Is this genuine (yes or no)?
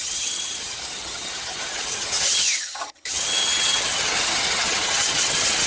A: no